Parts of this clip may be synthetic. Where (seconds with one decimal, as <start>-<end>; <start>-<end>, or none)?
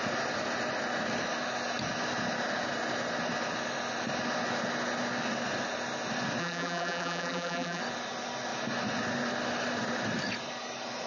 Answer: 6.4-7.8